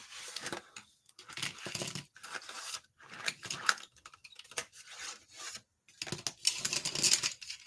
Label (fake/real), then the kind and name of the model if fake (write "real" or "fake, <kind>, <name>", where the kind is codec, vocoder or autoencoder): real